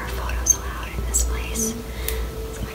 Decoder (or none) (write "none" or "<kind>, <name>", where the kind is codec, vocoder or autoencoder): none